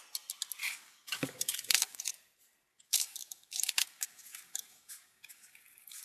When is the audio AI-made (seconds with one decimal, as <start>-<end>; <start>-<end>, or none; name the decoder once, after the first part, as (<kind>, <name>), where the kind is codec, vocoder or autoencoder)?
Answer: 0.6-2.1 (codec, DAC); 2.7-6.0